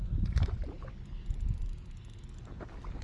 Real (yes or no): yes